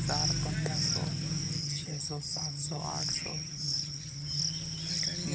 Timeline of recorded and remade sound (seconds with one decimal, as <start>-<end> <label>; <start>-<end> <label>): 0.0-1.6 recorded; 1.6-2.8 remade; 2.8-3.3 recorded; 3.3-4.4 remade; 4.4-5.3 recorded